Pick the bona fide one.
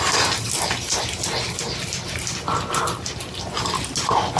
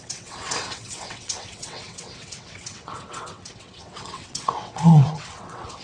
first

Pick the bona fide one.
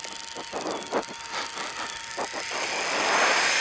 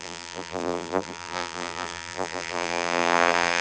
first